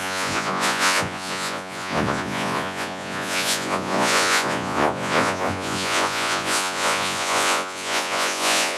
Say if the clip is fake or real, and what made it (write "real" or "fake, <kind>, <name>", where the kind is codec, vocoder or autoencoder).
fake, vocoder, Vocos